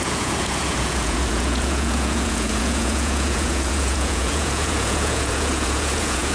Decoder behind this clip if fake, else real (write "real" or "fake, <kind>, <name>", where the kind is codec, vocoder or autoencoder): fake, vocoder, Vocos